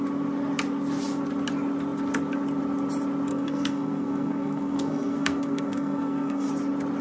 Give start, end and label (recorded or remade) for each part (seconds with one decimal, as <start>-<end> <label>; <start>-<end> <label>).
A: 0.0-3.3 recorded; 3.3-6.5 remade; 6.5-7.0 recorded